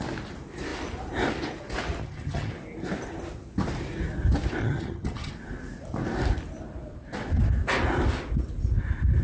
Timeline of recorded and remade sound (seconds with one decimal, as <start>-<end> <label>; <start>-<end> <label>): 0.0-2.0 recorded; 2.0-2.5 remade; 2.5-4.6 recorded; 4.6-5.3 remade; 5.3-9.2 recorded